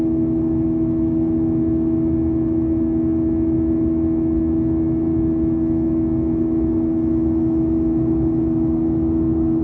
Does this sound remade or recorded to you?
recorded